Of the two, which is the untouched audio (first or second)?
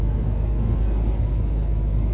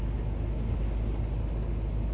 second